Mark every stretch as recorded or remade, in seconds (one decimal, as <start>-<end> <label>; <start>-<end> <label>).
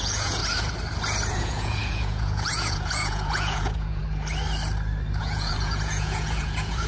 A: 0.0-0.4 remade; 0.4-1.3 recorded; 1.3-4.0 remade; 4.0-5.2 recorded; 5.2-6.9 remade